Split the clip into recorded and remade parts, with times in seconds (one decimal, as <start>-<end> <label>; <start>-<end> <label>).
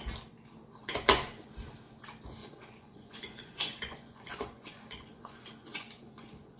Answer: 0.0-0.8 recorded; 0.8-1.5 remade; 1.5-2.4 recorded; 2.4-6.6 remade